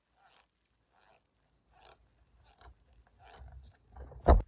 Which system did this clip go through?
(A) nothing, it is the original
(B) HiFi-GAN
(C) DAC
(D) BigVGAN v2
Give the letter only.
A